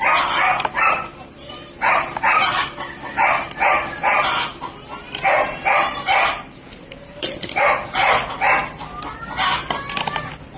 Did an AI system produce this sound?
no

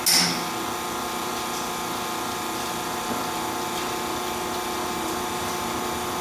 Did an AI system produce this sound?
no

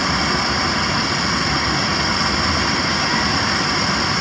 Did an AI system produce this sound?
no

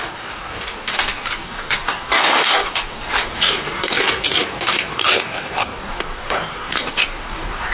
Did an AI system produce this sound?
yes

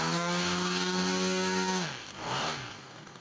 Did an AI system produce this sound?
yes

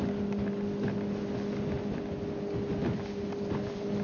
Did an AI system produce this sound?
no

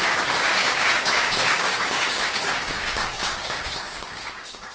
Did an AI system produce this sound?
yes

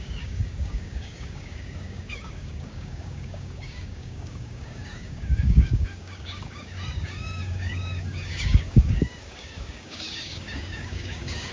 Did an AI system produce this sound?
yes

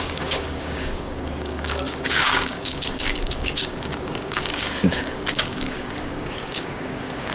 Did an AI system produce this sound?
yes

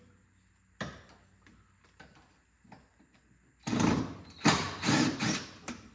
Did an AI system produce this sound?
no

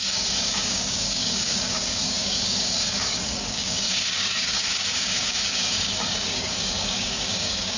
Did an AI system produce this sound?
yes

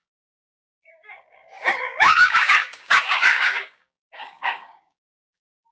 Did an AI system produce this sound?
yes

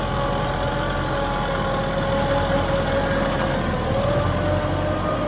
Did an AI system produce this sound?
no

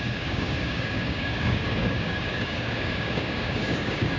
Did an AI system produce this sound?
yes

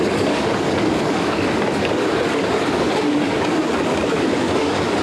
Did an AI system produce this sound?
yes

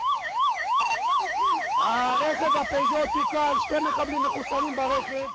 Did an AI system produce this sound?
yes